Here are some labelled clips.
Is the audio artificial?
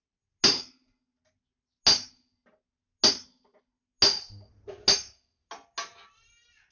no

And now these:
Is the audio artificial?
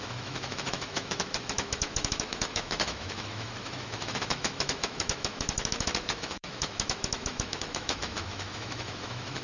yes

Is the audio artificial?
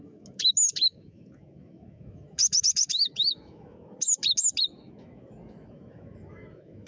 yes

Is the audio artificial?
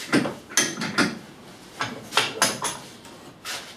no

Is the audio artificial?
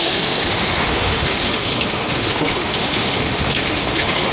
yes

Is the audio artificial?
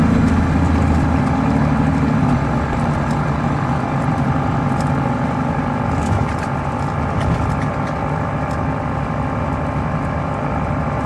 no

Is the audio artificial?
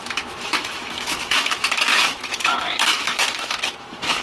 yes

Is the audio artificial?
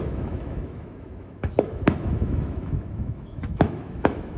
yes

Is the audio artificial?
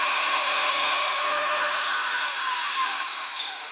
yes